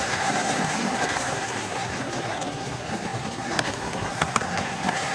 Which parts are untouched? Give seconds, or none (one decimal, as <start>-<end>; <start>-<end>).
none